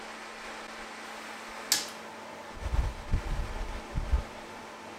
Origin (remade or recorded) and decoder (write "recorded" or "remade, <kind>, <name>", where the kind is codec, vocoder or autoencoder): recorded